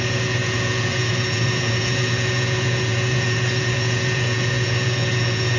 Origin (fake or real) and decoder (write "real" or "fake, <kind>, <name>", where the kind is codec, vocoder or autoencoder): fake, vocoder, Vocos